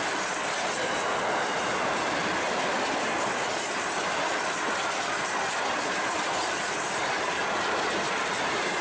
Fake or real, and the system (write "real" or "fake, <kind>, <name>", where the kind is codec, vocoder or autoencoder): real